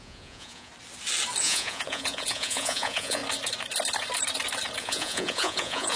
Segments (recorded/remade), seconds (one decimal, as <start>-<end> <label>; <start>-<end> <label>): 0.0-0.7 remade; 0.7-1.4 recorded; 1.4-3.2 remade; 3.2-4.8 recorded; 4.8-6.0 remade